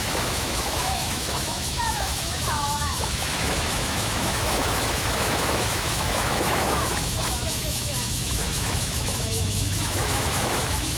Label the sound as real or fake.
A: fake